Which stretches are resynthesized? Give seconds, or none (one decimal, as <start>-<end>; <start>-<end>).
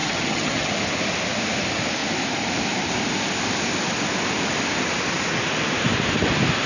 0.0-0.7